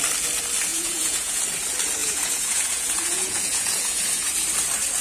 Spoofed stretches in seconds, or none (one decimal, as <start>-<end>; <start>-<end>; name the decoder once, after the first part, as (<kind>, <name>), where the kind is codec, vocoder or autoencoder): 0.7-1.4 (vocoder, Vocos); 2.0-4.3